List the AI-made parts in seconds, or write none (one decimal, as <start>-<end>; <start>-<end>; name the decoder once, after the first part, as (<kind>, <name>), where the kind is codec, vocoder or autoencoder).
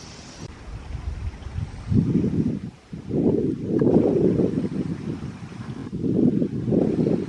0.0-1.2 (vocoder, BigVGAN v2); 2.0-5.8